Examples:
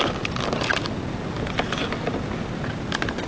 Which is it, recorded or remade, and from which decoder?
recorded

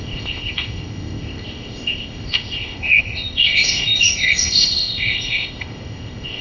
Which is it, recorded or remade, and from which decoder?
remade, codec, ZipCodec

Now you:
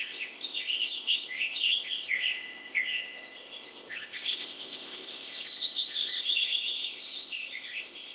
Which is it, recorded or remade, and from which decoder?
remade, codec, ZipCodec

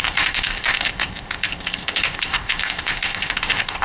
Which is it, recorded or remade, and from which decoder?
remade, codec, ZipCodec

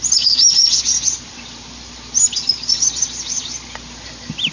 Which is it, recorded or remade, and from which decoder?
recorded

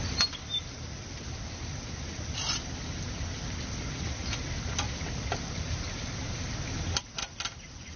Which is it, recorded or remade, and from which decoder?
recorded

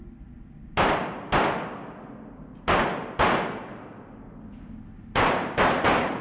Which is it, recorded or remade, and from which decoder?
recorded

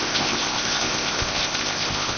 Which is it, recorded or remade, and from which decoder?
remade, codec, ZipCodec